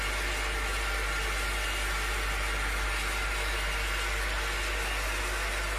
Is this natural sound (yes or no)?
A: yes